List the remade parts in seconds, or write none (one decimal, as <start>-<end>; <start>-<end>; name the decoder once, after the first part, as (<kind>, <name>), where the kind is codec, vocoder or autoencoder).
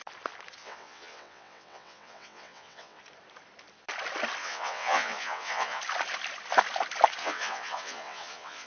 0.6-3.0 (vocoder, WaveNeXt); 4.4-5.8; 7.2-8.7